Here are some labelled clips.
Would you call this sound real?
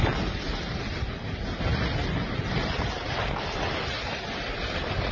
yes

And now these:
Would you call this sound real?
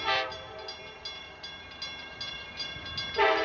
yes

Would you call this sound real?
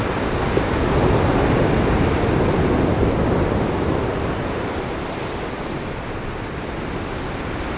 yes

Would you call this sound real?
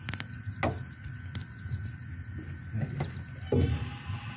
yes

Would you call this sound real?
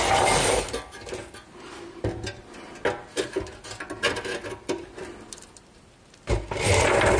yes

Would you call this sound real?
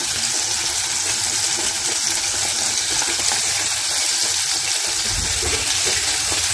yes